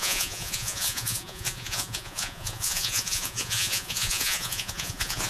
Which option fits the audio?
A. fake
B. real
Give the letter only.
A